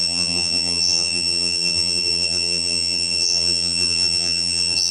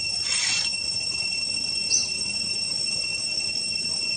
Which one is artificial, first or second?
first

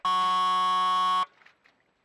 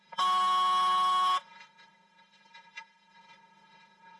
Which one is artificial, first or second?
second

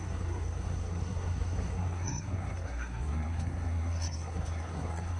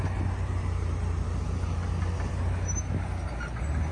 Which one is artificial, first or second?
first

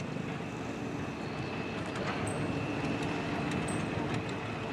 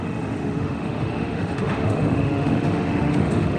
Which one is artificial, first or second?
second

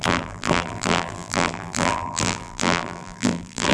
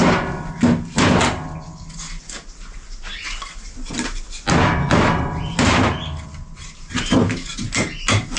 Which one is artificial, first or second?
first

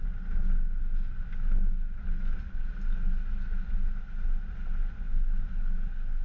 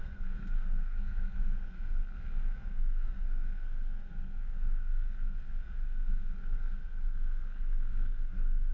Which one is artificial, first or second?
second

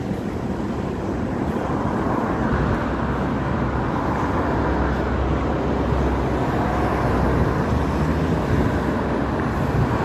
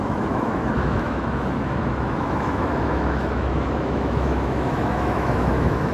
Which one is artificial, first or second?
second